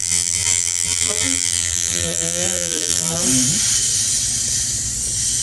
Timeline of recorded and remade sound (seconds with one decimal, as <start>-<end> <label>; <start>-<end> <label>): 0.0-3.2 remade; 3.2-5.4 recorded

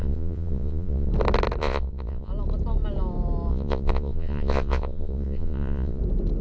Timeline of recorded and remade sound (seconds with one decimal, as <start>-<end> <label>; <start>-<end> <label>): 0.0-1.1 remade; 1.1-1.6 recorded; 1.6-2.3 remade; 2.3-3.5 recorded; 3.5-6.0 remade; 6.0-6.4 recorded

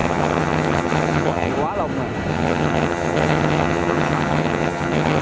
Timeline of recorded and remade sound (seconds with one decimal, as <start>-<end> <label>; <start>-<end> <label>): 0.0-1.5 remade; 1.5-2.3 recorded; 2.3-5.2 remade